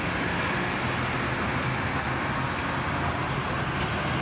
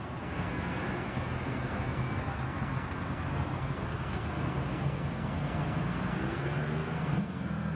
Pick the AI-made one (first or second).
second